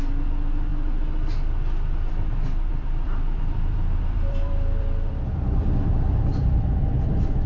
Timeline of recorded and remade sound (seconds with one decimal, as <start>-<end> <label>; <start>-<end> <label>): 0.0-2.7 recorded; 2.7-6.6 remade; 6.6-7.5 recorded